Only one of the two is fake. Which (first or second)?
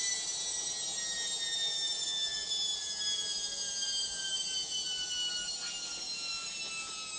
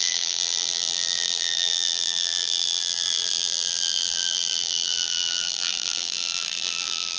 second